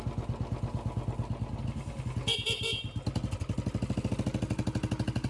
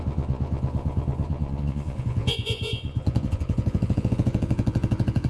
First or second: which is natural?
first